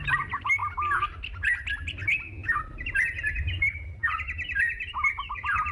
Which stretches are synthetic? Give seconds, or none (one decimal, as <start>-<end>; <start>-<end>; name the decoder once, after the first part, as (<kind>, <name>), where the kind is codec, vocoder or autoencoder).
0.0-0.6 (vocoder, BigVGAN v2); 2.6-5.7